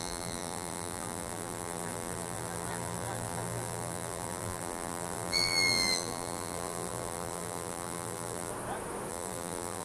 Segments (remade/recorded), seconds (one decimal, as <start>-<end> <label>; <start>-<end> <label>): 0.0-8.5 remade; 8.5-9.1 recorded; 9.1-9.8 remade